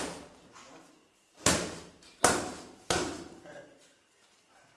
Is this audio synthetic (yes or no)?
yes